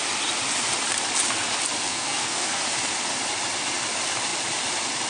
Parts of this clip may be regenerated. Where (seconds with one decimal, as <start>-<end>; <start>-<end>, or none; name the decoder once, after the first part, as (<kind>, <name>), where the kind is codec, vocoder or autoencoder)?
1.9-2.6 (codec, SNAC)